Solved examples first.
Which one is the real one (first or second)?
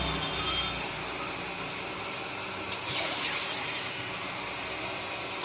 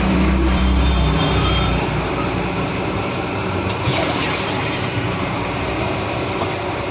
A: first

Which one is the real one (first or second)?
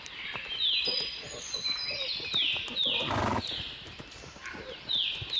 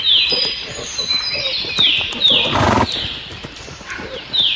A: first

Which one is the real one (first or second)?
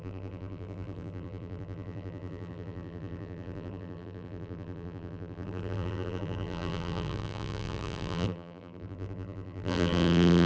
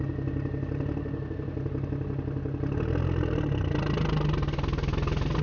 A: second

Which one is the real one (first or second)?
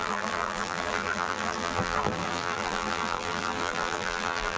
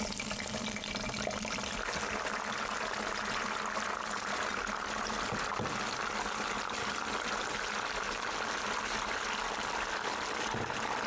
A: second